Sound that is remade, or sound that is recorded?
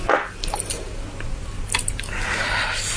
recorded